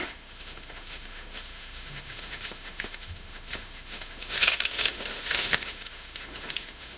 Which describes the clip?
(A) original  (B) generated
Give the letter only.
B